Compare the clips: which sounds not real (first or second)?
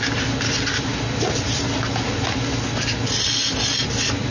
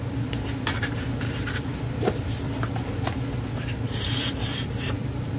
second